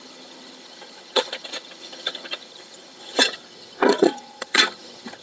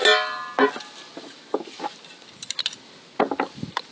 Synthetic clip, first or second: first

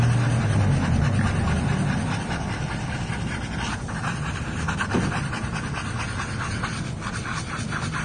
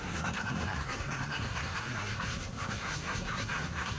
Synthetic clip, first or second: second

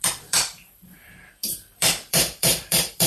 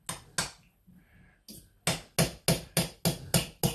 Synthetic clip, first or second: first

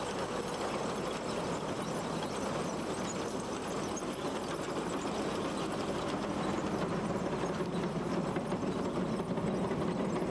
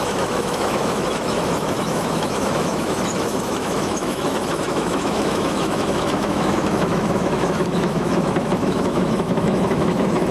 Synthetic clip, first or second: second